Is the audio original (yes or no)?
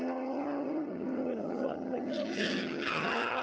no